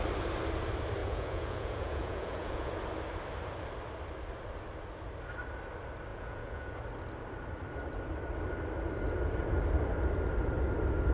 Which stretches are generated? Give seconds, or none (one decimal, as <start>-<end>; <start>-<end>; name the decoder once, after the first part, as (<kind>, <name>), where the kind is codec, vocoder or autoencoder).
1.0-2.7 (vocoder, Vocos); 6.1-6.8